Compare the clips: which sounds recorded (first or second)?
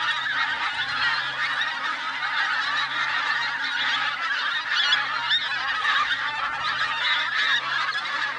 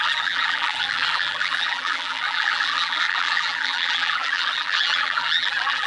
first